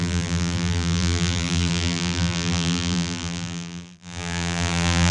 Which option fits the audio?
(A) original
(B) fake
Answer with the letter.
B